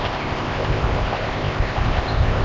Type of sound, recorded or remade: remade